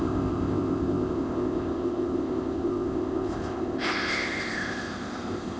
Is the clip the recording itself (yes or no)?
no